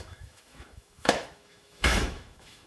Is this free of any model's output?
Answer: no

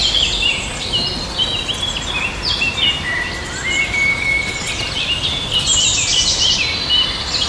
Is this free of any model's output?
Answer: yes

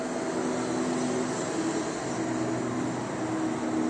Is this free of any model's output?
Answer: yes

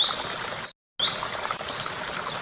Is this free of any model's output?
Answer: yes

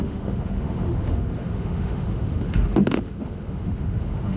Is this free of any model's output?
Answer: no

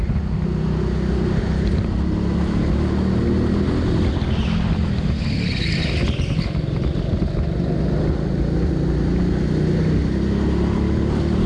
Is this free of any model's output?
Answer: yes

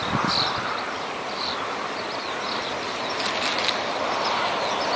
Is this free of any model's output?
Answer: yes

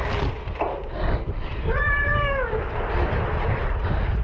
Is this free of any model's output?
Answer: yes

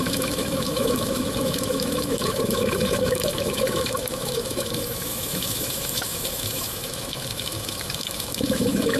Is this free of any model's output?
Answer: no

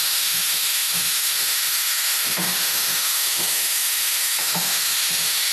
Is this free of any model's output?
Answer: no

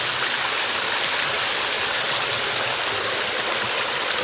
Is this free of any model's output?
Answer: yes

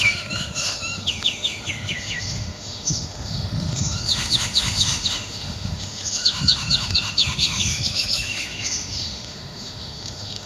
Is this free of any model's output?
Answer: no